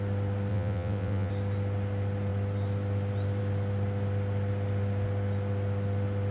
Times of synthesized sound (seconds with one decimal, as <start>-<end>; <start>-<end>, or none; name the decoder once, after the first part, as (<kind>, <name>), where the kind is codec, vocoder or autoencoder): 0.5-1.3 (vocoder, WaveNeXt)